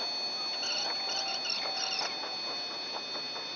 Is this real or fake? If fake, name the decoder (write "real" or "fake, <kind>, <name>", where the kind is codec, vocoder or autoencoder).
real